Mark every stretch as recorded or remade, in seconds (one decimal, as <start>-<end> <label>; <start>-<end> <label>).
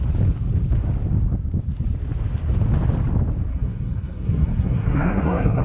0.0-3.5 recorded; 3.5-5.6 remade